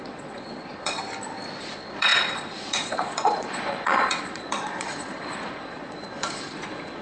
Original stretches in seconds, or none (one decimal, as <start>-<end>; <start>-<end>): 1.0-1.6